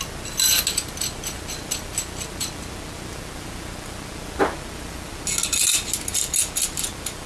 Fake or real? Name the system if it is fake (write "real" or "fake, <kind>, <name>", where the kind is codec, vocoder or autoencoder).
real